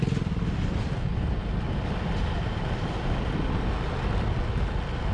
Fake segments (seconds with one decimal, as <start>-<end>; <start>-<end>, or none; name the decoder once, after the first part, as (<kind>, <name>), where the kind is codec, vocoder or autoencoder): none